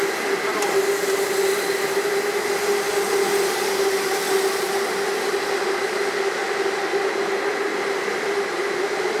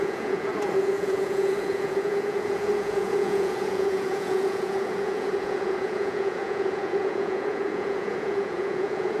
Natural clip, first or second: first